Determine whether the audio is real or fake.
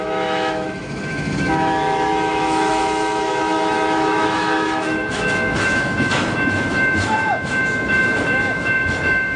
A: fake